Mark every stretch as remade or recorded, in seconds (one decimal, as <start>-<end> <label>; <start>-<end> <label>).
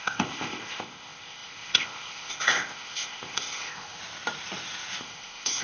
0.0-4.0 remade; 4.0-5.0 recorded; 5.0-5.6 remade